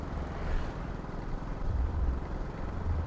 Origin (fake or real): fake